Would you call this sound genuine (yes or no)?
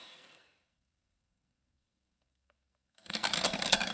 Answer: no